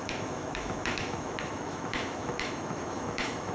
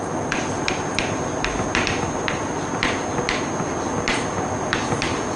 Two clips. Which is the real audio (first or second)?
second